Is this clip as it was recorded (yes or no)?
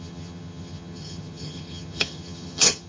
no